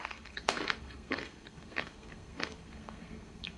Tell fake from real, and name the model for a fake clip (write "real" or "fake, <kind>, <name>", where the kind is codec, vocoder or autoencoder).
fake, codec, SNAC